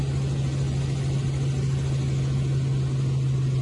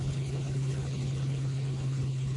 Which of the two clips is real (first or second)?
first